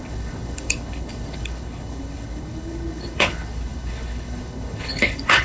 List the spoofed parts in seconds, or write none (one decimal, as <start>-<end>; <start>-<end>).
0.0-5.4